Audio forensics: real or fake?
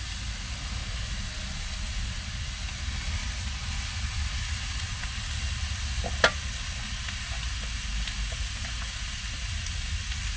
real